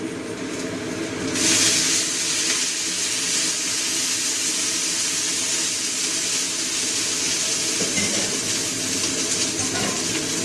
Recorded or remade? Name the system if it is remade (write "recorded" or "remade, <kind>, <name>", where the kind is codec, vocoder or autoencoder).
recorded